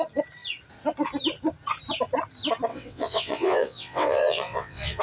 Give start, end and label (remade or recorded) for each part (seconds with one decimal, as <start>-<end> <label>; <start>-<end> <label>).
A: 0.0-2.7 recorded; 2.7-5.0 remade

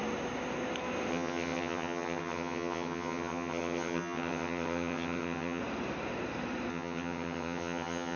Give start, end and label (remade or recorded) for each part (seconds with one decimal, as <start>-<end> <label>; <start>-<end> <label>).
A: 0.0-1.1 recorded; 1.1-5.6 remade; 5.6-6.7 recorded; 6.7-8.2 remade